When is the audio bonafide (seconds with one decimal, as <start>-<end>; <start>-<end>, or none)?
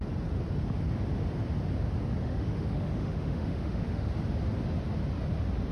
0.0-2.2; 4.1-5.7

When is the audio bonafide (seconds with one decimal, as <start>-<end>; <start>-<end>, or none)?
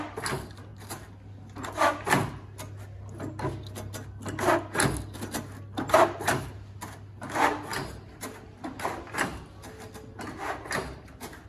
0.0-11.5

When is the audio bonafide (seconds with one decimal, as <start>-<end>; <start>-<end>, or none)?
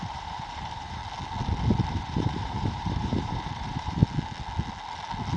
1.0-1.9; 4.0-5.4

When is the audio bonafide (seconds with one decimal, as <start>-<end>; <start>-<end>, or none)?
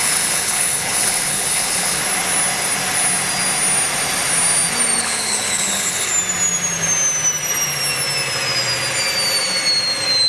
2.0-5.0; 6.1-10.3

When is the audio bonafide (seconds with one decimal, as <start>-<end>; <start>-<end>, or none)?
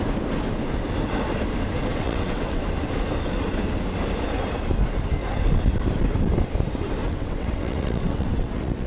0.0-1.9; 2.6-7.0